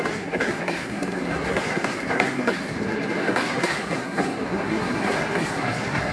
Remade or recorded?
remade